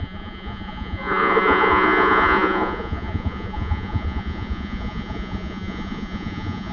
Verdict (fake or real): fake